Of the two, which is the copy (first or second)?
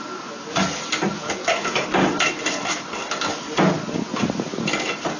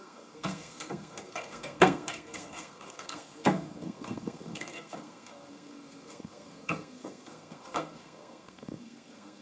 second